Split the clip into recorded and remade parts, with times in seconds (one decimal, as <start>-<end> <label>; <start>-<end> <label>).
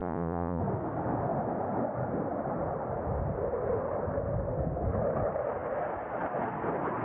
0.0-0.6 remade; 0.6-7.0 recorded